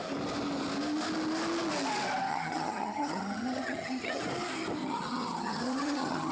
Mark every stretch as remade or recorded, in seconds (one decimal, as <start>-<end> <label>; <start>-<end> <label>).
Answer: 0.0-2.3 recorded; 2.3-4.2 remade; 4.2-4.8 recorded; 4.8-6.3 remade